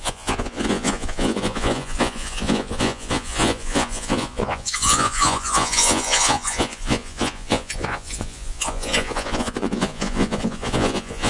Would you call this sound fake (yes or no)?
yes